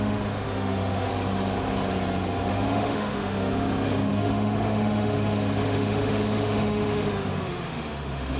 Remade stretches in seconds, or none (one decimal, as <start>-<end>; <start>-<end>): 0.0-1.1; 2.5-8.4